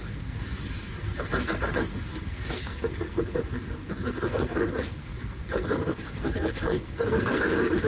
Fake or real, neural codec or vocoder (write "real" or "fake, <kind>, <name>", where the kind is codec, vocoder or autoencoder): fake, codec, SNAC